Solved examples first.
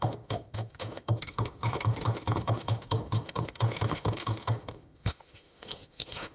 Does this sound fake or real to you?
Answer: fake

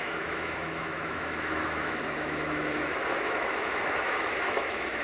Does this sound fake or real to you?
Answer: fake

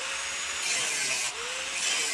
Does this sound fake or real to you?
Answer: real